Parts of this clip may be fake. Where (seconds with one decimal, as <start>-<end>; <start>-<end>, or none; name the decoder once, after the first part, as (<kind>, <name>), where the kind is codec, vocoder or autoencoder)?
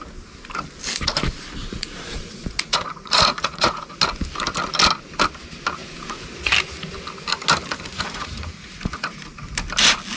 1.6-4.0 (vocoder, Vocos); 5.8-6.5; 7.9-9.2